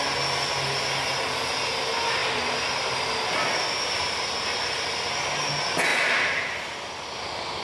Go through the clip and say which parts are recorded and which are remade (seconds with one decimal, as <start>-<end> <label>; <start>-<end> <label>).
0.0-7.6 recorded